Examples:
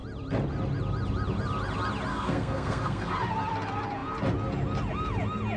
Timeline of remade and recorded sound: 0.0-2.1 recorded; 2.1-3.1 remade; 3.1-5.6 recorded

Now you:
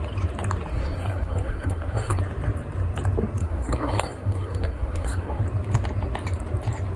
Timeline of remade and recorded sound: 0.0-0.7 recorded; 0.7-2.2 remade; 2.2-3.4 recorded; 3.4-5.4 remade; 5.4-7.0 recorded

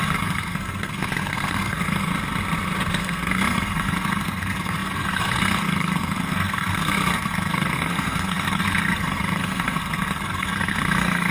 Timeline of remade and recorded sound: 0.0-2.1 remade; 2.1-3.0 recorded; 3.0-11.3 remade

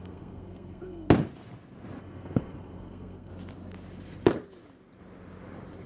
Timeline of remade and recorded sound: 0.0-1.1 remade; 1.1-2.0 recorded; 2.0-3.3 remade; 3.3-5.9 recorded

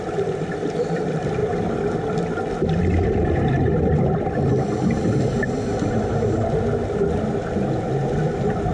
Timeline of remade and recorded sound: 0.0-8.7 recorded

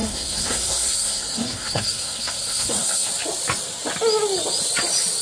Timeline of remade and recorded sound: 0.0-3.1 remade; 3.1-5.2 recorded

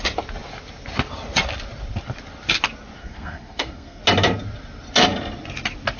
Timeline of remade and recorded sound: 0.0-3.0 recorded; 3.0-4.0 remade; 4.0-6.0 recorded

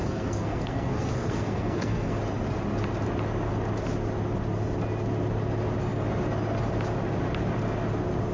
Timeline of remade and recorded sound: 0.0-2.2 remade; 2.2-8.3 recorded